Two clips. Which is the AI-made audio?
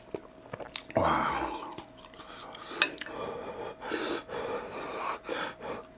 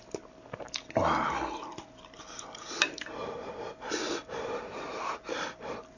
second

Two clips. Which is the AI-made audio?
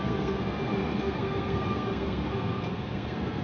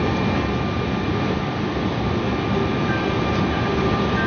first